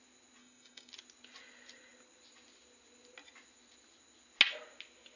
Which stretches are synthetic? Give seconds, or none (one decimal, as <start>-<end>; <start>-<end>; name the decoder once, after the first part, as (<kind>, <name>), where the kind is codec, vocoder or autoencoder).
0.4-0.9 (codec, DAC)

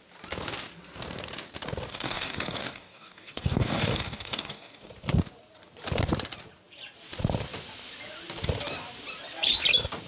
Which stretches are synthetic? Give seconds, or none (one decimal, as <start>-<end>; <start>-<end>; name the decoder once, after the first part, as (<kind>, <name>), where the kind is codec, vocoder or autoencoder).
1.9-4.9 (codec, DAC)

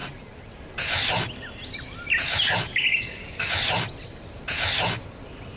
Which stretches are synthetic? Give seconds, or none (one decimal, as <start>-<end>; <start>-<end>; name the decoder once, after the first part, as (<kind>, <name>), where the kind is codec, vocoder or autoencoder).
2.7-3.5 (codec, DAC)